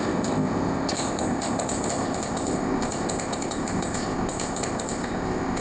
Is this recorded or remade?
remade